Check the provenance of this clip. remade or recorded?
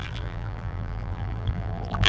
remade